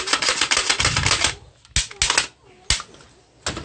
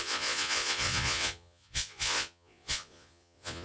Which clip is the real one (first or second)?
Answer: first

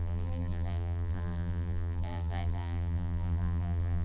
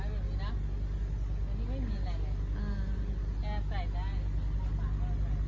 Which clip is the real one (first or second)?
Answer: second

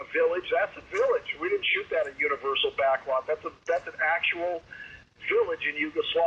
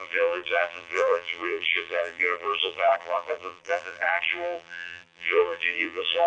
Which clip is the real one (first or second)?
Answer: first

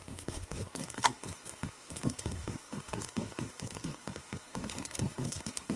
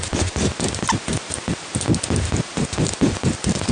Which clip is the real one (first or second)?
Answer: second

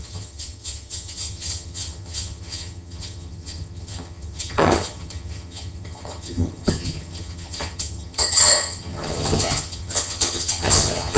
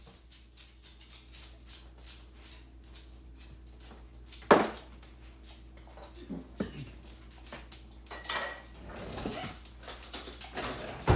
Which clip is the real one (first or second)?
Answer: second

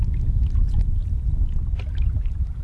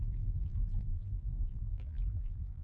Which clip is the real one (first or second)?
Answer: first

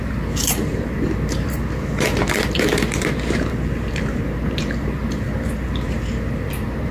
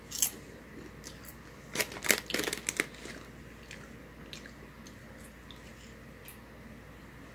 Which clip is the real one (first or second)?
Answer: second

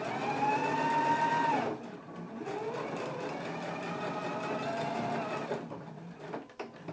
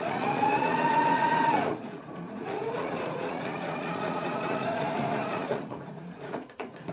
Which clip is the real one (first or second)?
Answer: first